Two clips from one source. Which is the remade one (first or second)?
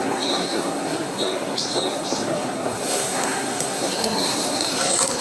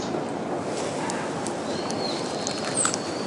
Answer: first